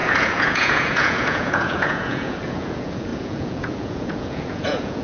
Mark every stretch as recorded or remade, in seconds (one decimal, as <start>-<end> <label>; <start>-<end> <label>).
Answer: 0.0-5.0 remade